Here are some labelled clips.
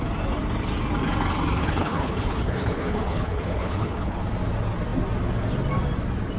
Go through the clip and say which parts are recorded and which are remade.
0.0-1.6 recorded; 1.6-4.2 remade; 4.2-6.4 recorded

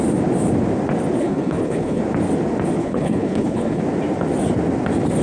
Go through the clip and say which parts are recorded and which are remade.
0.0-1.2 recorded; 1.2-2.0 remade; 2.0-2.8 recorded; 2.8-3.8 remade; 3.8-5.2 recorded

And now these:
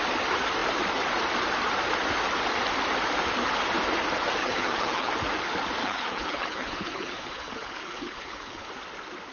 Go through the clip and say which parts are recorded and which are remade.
0.0-4.4 recorded; 4.4-5.1 remade; 5.1-5.8 recorded; 5.8-8.7 remade; 8.7-9.3 recorded